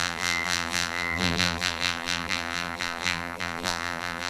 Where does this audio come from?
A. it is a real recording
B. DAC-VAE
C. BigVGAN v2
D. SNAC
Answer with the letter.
C